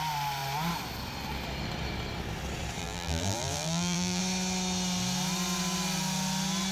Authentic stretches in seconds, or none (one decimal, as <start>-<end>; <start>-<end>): 0.0-2.8; 4.2-6.7